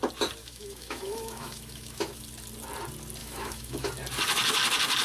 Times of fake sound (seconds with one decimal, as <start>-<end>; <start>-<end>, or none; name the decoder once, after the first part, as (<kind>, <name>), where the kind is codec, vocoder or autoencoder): 0.4-2.2 (autoencoder, DAC-VAE); 3.2-3.9